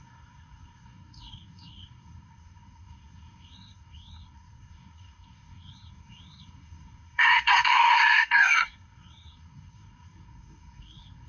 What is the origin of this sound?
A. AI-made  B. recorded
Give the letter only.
A